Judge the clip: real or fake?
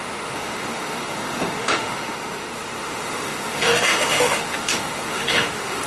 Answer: fake